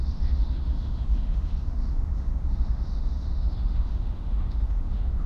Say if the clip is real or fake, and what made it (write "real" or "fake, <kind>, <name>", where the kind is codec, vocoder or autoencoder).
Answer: fake, autoencoder, DAC-VAE